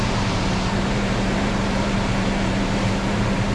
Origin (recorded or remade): remade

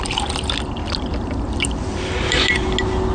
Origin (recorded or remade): recorded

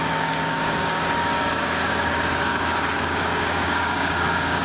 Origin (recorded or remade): remade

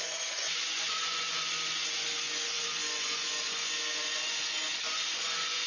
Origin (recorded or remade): remade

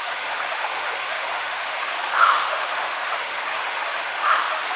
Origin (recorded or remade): remade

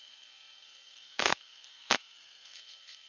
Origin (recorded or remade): remade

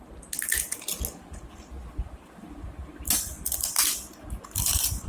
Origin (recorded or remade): recorded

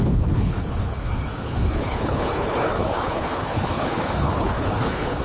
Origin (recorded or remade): remade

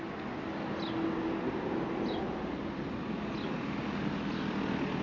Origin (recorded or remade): recorded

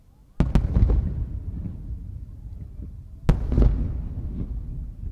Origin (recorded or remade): recorded